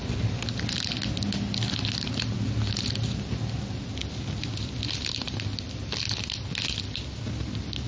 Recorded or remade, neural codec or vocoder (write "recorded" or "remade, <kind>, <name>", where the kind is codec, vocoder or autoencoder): recorded